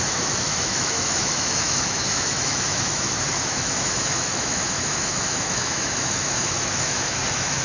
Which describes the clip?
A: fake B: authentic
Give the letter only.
A